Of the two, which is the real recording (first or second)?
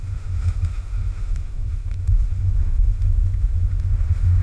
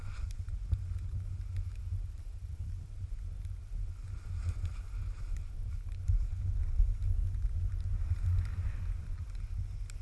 second